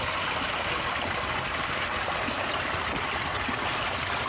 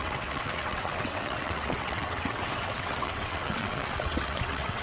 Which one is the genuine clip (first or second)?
first